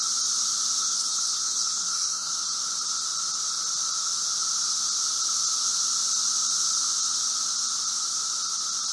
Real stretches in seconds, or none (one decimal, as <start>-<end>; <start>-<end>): 0.0-0.8; 2.4-8.9